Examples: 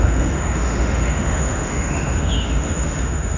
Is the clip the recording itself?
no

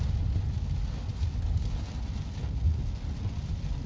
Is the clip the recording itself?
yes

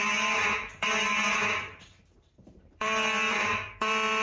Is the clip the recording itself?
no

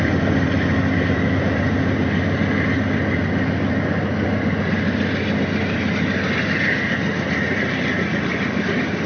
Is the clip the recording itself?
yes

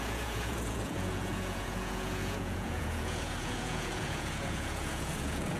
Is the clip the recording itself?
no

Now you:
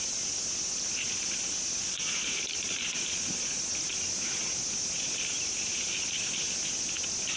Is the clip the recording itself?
yes